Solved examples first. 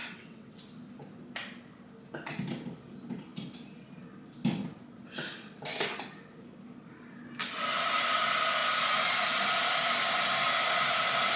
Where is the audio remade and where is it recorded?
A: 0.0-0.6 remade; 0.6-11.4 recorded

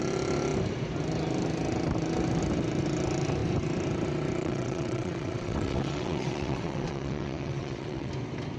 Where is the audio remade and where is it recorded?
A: 0.0-4.4 recorded; 4.4-8.1 remade; 8.1-8.6 recorded

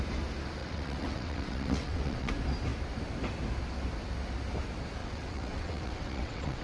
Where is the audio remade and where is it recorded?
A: 0.0-0.6 recorded; 0.6-2.3 remade; 2.3-5.0 recorded; 5.0-6.6 remade

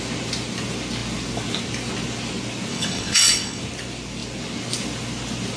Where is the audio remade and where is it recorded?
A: 0.0-2.7 recorded; 2.7-3.6 remade; 3.6-5.6 recorded

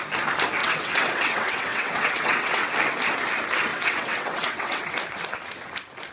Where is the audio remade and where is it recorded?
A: 0.0-0.6 recorded; 0.6-2.7 remade; 2.7-3.7 recorded; 3.7-4.9 remade; 4.9-6.1 recorded